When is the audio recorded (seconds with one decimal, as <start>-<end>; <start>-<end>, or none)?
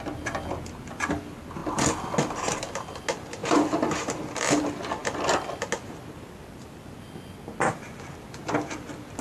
0.0-3.4; 4.6-9.2